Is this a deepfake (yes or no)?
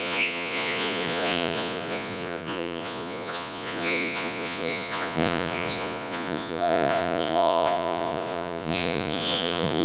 yes